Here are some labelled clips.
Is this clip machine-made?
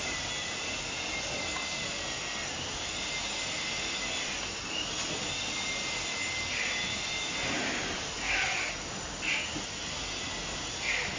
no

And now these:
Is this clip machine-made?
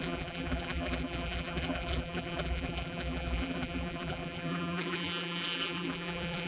yes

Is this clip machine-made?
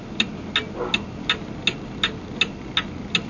no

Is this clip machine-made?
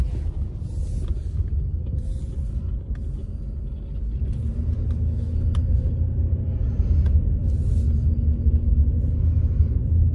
no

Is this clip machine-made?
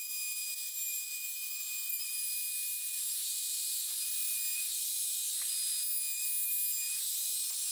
no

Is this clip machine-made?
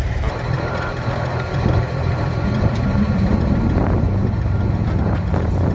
yes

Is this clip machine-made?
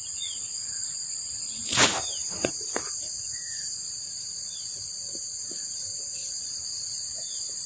yes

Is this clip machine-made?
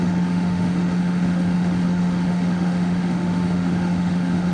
yes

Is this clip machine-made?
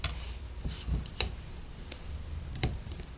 no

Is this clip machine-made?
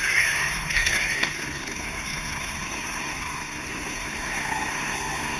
yes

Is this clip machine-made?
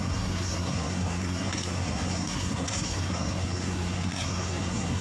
yes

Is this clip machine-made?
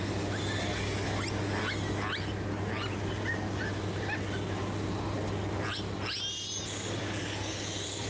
no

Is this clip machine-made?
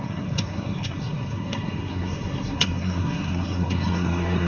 yes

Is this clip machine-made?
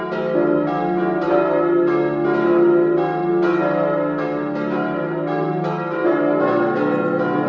no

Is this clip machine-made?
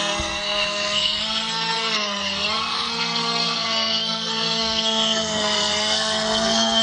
yes